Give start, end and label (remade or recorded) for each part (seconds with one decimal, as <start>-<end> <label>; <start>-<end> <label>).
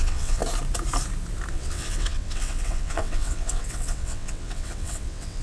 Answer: 0.0-0.4 remade; 0.4-1.5 recorded; 1.5-5.4 remade